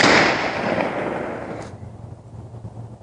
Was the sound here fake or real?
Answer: real